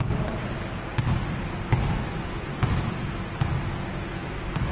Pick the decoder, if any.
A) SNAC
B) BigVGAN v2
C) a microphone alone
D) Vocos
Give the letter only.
C